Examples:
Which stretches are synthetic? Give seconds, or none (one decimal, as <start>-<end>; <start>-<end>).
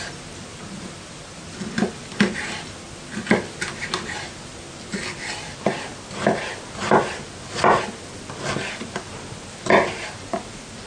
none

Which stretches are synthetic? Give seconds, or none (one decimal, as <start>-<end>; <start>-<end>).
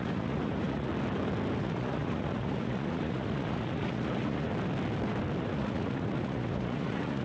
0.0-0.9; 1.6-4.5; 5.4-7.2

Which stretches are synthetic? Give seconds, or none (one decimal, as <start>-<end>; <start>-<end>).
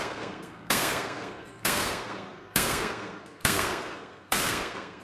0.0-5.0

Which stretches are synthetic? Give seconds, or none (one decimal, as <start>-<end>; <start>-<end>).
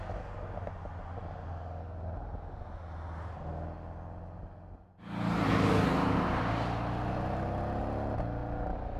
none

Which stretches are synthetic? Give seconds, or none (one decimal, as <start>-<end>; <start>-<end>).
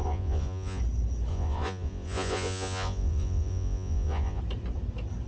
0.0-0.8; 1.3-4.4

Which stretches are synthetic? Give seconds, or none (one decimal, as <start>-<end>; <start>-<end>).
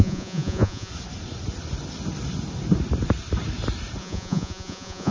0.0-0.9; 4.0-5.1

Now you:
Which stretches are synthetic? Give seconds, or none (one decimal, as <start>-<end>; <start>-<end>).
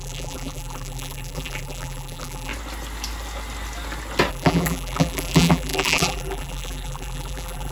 0.0-2.5; 4.3-7.7